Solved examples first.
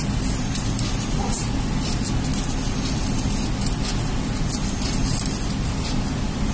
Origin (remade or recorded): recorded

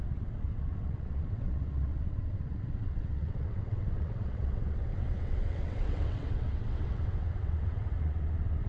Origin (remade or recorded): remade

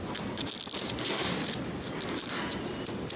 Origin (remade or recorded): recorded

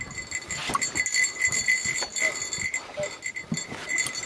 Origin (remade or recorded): recorded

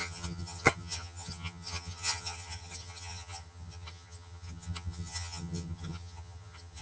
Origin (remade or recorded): remade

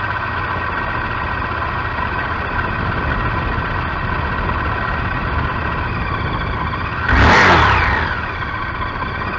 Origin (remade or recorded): recorded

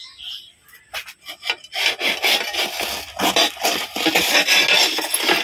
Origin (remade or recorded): recorded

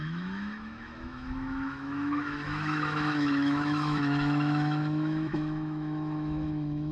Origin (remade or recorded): remade